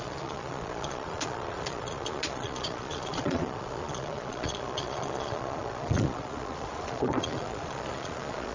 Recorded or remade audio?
remade